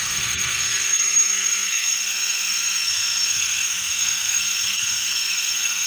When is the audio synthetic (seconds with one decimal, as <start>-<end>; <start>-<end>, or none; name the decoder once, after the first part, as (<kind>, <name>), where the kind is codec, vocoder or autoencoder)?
0.0-5.9 (codec, SNAC)